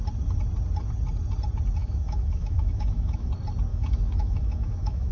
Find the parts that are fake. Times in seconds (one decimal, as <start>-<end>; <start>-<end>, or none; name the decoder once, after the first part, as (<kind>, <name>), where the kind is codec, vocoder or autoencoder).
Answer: 1.8-3.3 (autoencoder, DAC-VAE); 3.7-5.1